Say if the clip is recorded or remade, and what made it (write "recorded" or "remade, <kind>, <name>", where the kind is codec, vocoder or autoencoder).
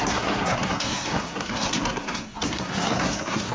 remade, codec, SNAC